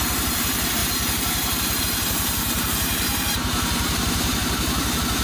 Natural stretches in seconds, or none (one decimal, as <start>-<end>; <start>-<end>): none